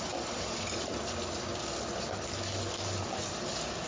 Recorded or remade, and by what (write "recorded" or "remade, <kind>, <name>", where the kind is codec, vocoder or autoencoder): recorded